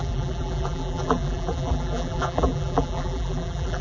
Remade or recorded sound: remade